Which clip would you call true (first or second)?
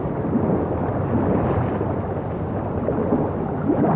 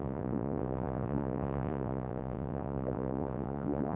first